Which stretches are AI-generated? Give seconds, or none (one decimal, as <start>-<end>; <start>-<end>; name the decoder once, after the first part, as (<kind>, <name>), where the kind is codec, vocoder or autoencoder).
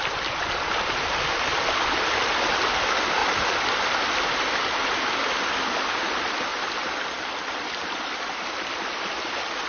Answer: none